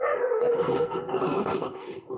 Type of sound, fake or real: fake